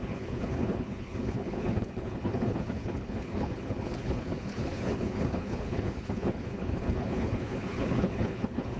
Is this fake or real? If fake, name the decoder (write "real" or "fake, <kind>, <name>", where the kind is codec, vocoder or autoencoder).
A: fake, codec, HILCodec